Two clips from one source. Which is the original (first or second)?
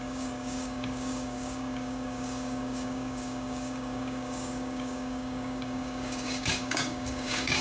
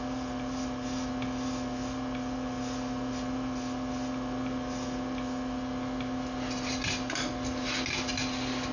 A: second